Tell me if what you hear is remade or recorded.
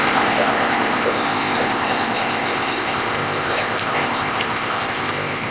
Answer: remade